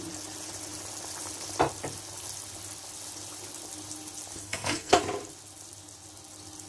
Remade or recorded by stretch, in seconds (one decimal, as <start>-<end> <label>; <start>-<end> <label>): 0.0-4.4 recorded; 4.4-5.0 remade; 5.0-6.7 recorded